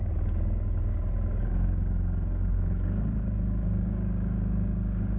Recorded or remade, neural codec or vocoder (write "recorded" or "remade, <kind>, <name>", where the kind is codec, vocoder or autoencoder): remade, codec, DAC